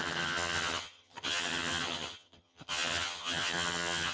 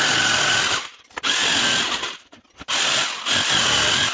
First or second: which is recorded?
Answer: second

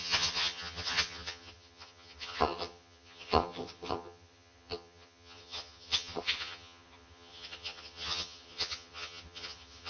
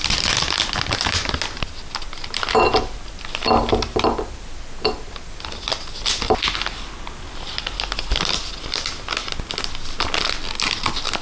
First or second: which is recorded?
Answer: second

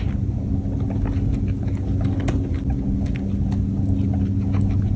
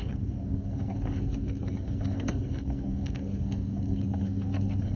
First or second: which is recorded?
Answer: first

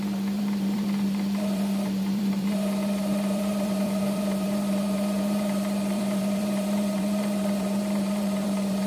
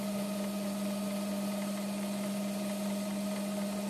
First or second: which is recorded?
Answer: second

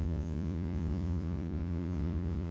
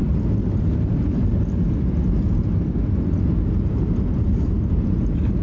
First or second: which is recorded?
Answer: second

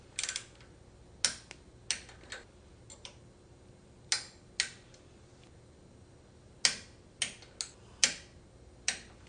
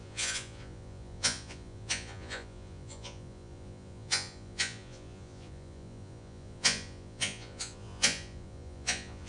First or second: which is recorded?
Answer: first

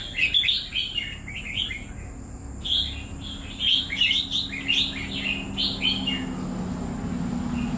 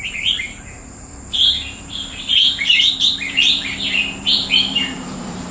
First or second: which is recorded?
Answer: first